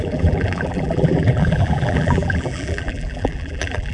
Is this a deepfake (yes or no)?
yes